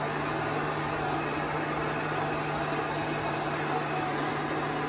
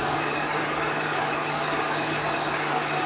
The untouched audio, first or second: first